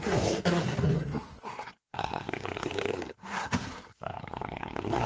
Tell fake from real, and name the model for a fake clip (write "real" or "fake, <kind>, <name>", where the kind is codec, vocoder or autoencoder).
fake, codec, SNAC